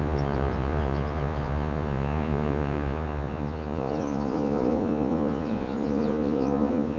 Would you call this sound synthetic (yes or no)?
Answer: yes